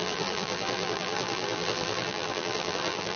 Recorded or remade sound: remade